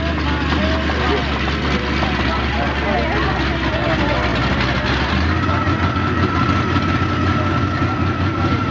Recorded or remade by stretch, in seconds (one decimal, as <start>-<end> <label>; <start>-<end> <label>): 0.0-8.7 recorded